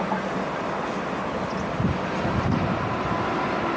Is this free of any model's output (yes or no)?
yes